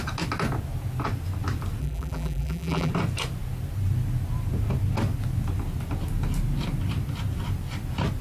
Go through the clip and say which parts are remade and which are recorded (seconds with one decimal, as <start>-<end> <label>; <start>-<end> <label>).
0.0-1.8 recorded; 1.8-2.9 remade; 2.9-8.2 recorded